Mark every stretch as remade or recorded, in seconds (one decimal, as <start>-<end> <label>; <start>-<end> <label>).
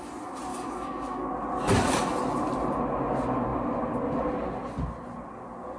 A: 0.0-0.5 recorded; 0.5-1.3 remade; 1.3-5.8 recorded